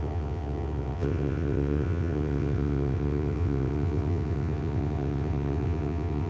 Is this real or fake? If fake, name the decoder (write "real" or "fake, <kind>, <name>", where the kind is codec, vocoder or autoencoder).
fake, vocoder, WaveNeXt